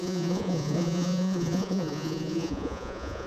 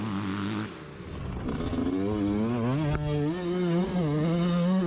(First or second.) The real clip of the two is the second